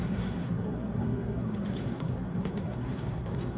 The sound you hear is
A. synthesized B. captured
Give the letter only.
A